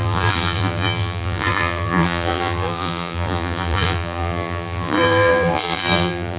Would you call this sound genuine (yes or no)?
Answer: no